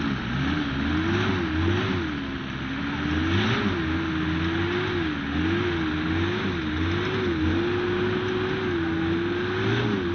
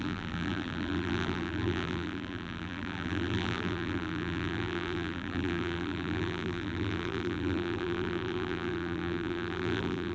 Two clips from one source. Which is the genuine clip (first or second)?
first